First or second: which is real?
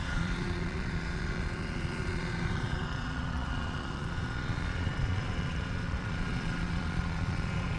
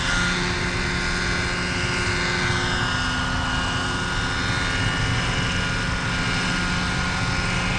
second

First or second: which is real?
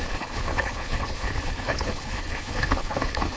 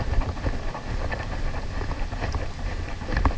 second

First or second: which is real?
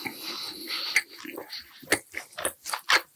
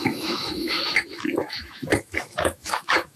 first